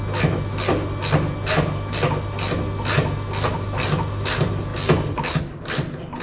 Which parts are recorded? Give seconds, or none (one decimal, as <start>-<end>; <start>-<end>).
0.0-6.2